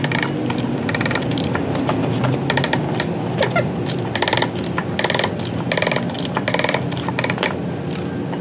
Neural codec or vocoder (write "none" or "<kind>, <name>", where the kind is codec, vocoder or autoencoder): none